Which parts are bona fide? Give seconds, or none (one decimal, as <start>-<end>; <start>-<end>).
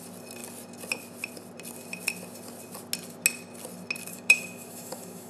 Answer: 0.0-4.1